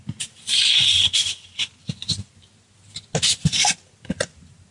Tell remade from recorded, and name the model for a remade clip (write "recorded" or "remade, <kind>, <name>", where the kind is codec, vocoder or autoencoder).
recorded